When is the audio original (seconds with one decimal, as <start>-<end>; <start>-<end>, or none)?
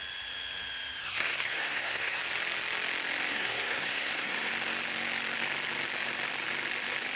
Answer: 0.0-1.0; 2.2-3.3; 4.5-7.2